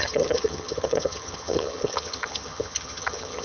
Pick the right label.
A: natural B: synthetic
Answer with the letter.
B